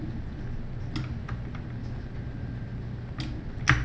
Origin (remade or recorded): recorded